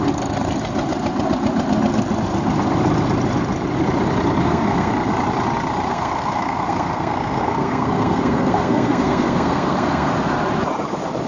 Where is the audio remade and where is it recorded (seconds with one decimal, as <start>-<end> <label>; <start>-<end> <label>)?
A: 0.0-4.4 recorded; 4.4-4.9 remade; 4.9-5.9 recorded; 5.9-10.1 remade; 10.1-11.3 recorded